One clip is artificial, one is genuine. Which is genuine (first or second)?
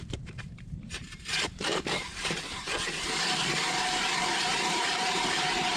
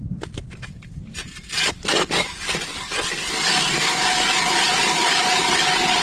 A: second